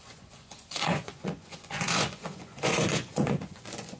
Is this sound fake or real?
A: fake